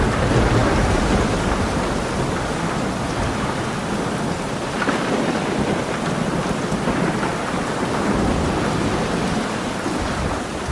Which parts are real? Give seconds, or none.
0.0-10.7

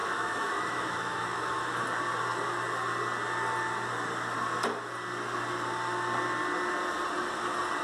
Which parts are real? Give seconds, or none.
1.7-7.8